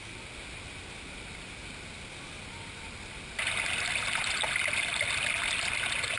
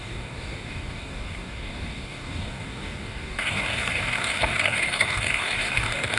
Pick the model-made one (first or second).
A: second